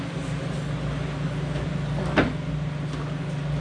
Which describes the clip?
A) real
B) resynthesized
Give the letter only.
A